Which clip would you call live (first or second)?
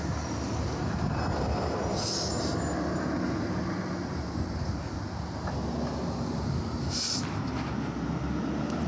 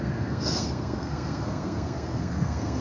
first